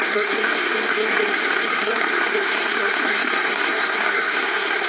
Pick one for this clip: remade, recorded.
remade